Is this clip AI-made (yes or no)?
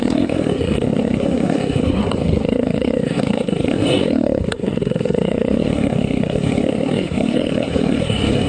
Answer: yes